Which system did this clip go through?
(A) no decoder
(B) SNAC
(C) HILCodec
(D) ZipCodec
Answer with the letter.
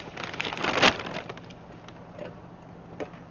A